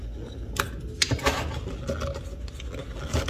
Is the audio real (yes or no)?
yes